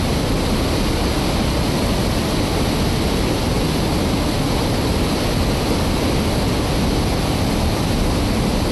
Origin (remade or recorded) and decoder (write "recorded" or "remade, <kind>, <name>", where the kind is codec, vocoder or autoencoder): recorded